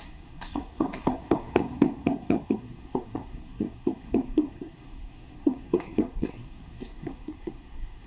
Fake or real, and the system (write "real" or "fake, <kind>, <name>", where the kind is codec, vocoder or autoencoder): fake, codec, SNAC